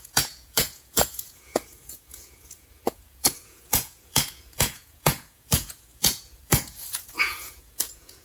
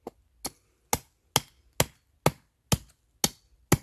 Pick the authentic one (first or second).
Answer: second